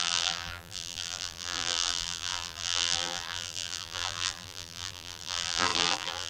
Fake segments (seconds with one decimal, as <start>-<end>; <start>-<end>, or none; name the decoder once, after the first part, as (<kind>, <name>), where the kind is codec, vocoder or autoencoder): 0.0-6.3 (vocoder, BigVGAN v2)

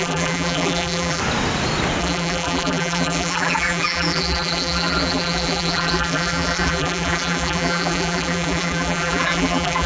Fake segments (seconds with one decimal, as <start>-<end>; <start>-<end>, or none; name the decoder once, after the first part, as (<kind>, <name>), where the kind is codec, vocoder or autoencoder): 0.0-1.2 (vocoder, BigVGAN v2); 2.0-9.9

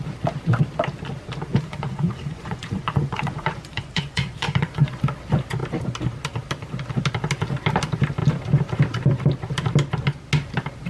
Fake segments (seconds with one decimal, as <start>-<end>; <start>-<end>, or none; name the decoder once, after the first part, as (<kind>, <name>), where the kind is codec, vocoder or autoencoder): 1.5-5.0 (vocoder, Vocos)

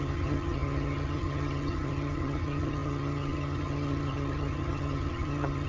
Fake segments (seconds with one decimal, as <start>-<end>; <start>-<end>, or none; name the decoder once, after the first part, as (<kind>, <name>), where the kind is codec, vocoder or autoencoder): 0.0-5.7 (vocoder, HiFi-GAN)

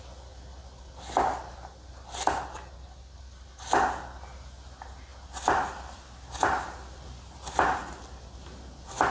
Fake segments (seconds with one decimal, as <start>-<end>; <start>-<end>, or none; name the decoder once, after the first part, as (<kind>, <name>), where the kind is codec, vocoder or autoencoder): none

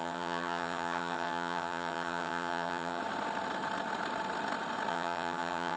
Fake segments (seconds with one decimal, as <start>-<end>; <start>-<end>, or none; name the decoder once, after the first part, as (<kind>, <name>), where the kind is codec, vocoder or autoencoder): 0.0-3.0 (vocoder, HiFi-GAN); 4.9-5.8

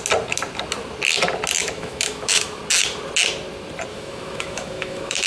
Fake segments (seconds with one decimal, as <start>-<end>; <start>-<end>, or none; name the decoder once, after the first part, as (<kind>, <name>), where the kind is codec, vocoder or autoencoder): 1.6-2.6 (autoencoder, DAC-VAE); 3.9-5.3